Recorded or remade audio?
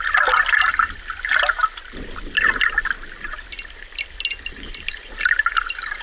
recorded